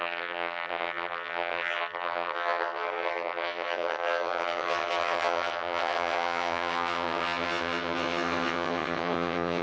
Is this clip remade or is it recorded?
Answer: remade